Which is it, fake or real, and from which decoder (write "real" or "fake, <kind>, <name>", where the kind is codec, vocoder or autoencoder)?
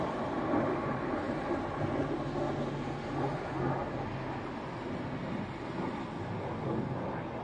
real